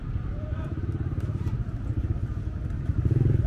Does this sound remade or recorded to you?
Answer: remade